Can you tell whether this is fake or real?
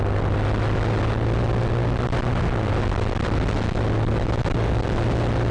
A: real